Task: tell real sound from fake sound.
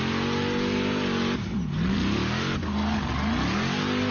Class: real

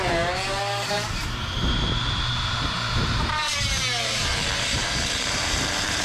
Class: fake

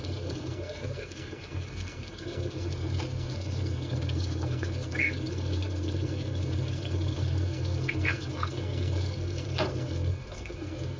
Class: fake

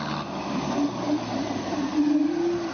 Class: real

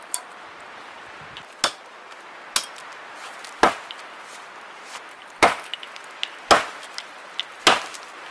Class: real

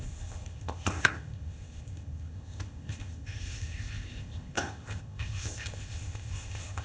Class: fake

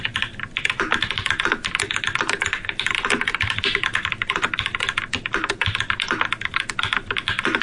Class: real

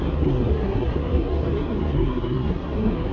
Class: fake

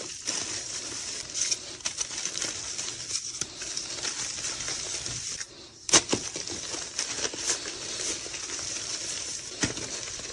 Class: fake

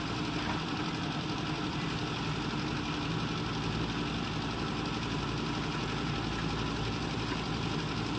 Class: real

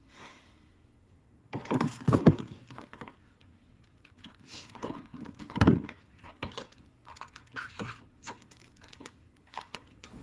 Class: fake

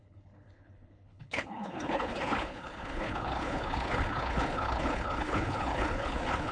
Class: fake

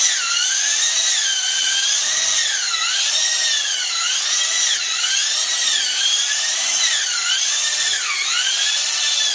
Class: fake